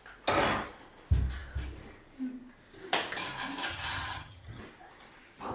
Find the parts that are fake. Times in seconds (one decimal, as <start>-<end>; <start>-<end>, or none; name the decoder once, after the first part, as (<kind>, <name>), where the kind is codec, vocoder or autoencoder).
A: 3.7-4.6 (vocoder, HiFi-GAN)

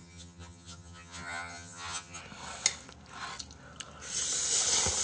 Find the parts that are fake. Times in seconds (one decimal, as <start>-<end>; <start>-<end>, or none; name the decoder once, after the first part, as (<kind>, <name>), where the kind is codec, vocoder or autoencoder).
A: 0.0-2.2 (vocoder, HiFi-GAN)

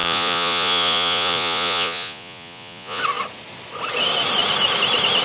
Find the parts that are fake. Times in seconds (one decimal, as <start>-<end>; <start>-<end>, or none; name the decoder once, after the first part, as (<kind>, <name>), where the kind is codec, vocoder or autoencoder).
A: 0.0-3.0 (vocoder, Vocos)

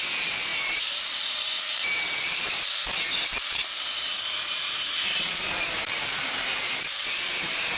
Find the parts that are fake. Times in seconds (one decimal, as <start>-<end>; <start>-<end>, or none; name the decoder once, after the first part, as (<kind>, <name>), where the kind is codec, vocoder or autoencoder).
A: 0.0-7.8 (vocoder, BigVGAN v2)